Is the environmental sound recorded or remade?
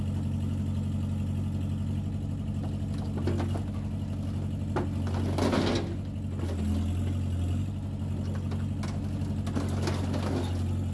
recorded